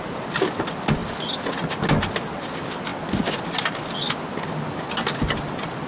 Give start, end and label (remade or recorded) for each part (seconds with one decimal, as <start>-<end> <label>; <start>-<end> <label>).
0.0-5.9 recorded